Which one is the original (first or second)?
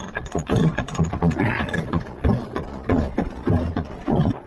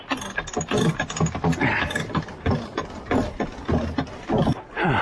second